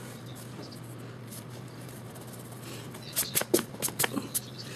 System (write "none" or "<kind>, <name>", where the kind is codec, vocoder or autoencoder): none